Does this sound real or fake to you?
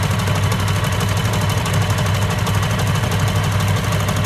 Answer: real